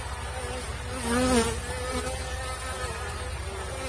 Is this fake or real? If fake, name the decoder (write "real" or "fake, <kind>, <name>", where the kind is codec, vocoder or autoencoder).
real